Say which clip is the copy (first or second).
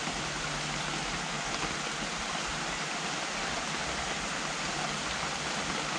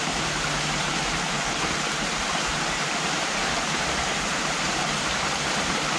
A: second